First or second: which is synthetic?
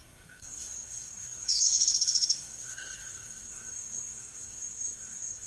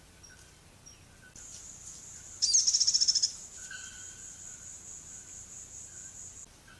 first